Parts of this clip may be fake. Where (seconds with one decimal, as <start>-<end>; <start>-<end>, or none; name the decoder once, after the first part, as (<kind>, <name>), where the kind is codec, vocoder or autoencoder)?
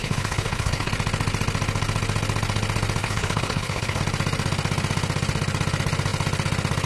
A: 0.0-0.9 (codec, HILCodec); 3.0-4.0